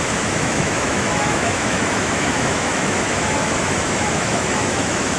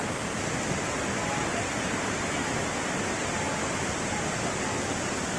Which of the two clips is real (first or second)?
second